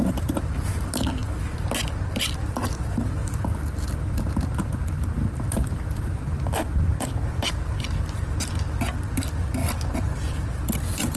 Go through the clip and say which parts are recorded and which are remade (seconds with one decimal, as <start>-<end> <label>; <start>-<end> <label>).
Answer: 0.0-9.6 remade; 9.6-10.5 recorded; 10.5-11.2 remade